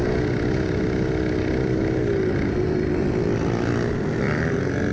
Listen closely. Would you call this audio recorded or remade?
recorded